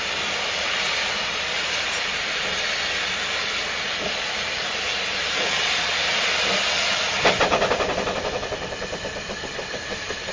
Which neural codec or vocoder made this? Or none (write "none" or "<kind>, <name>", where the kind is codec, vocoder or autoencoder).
vocoder, BigVGAN v2